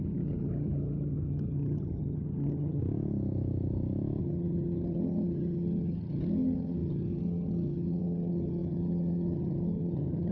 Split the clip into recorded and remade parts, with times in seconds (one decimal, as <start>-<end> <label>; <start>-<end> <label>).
0.0-2.8 remade; 2.8-4.2 recorded; 4.2-10.3 remade

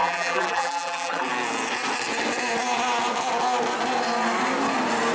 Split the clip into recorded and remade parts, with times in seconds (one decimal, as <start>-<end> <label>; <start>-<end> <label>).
0.0-1.3 remade; 1.3-5.1 recorded

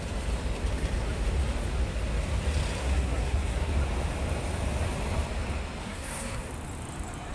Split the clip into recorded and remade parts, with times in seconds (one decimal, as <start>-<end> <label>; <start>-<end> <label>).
0.0-2.8 recorded; 2.8-3.7 remade; 3.7-5.8 recorded; 5.8-6.5 remade; 6.5-7.3 recorded

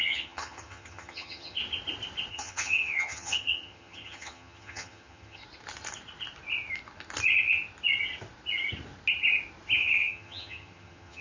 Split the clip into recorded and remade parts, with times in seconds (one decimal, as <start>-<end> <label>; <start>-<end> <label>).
0.0-1.6 remade; 1.6-2.3 recorded; 2.3-5.4 remade; 5.4-9.8 recorded; 9.8-11.2 remade

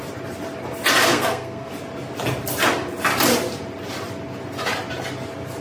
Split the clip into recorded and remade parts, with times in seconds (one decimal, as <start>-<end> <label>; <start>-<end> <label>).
0.0-1.0 recorded; 1.0-1.7 remade; 1.7-5.6 recorded

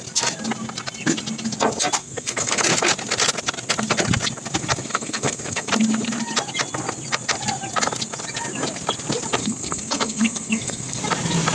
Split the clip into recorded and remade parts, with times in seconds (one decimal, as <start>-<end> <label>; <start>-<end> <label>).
0.0-2.0 recorded; 2.0-2.6 remade; 2.6-4.9 recorded; 4.9-5.7 remade; 5.7-9.4 recorded; 9.4-11.0 remade; 11.0-11.5 recorded